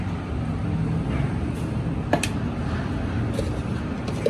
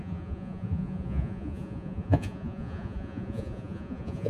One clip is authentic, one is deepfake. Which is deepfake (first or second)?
second